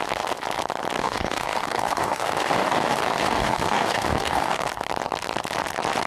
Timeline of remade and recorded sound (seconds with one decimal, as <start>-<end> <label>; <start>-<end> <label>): 0.0-1.0 recorded; 1.0-4.7 remade; 4.7-6.1 recorded